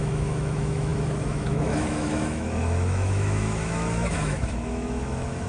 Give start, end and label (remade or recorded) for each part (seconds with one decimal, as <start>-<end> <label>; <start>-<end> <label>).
0.0-5.5 remade